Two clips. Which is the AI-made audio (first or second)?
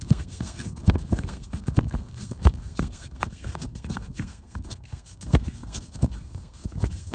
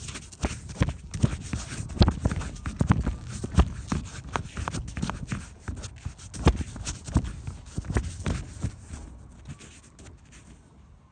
first